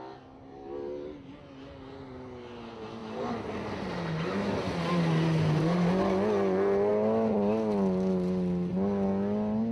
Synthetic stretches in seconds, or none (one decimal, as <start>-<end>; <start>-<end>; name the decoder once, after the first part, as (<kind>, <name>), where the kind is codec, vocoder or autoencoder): none